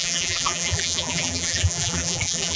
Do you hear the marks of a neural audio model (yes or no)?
yes